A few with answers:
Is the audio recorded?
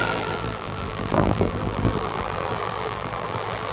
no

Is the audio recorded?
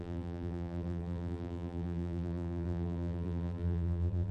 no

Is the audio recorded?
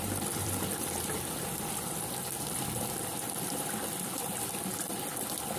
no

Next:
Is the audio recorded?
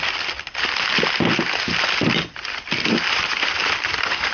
no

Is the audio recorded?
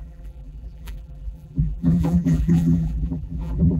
no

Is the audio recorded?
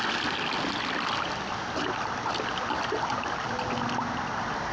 yes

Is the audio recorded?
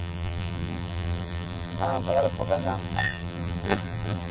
no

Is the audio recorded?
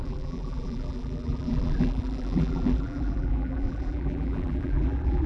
no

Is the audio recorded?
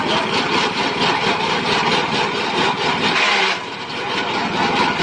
no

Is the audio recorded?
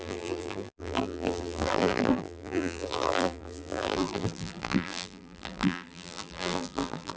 no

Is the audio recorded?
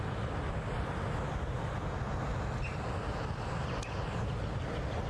yes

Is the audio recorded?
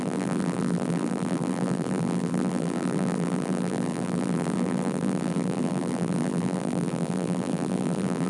no